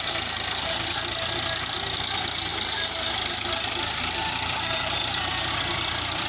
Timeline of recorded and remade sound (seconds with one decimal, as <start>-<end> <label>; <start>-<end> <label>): 0.0-5.0 remade; 5.0-5.5 recorded; 5.5-6.3 remade